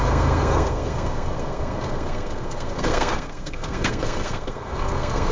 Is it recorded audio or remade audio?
remade